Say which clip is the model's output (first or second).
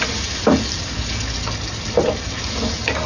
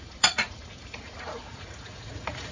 second